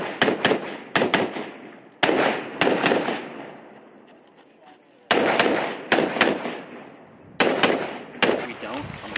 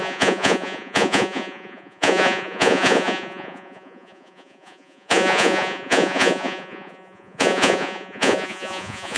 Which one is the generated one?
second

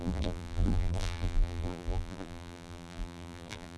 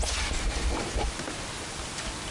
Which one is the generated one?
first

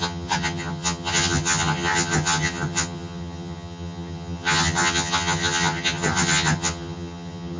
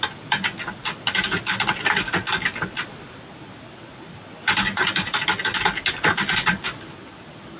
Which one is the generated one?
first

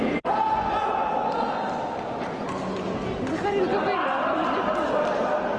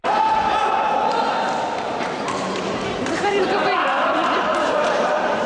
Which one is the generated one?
second